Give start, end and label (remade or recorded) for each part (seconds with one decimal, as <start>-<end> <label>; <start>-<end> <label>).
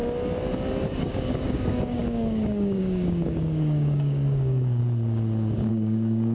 0.0-1.0 recorded; 1.0-4.8 remade; 4.8-5.7 recorded; 5.7-6.3 remade